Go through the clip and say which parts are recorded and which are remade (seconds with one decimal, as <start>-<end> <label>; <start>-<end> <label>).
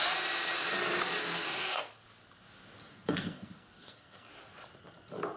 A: 0.0-1.2 recorded; 1.2-1.9 remade; 1.9-2.9 recorded; 2.9-4.3 remade; 4.3-5.4 recorded